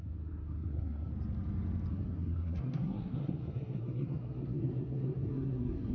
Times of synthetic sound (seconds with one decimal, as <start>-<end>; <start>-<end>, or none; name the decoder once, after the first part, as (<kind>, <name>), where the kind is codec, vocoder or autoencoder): 0.0-1.1 (codec, SNAC); 1.9-5.9